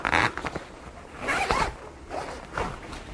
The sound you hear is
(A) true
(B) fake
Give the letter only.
A